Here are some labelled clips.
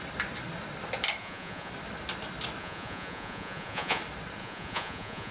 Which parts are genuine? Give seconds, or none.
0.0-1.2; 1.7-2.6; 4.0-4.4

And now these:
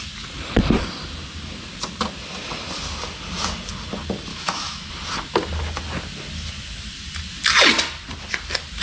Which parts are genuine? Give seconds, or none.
0.0-4.3; 4.9-8.8

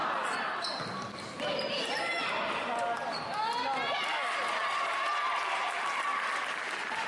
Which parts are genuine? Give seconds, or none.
0.0-7.1

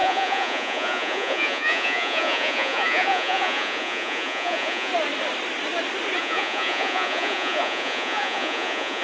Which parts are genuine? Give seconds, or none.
4.9-6.2